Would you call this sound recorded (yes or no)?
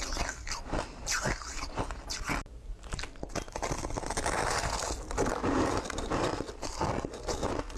yes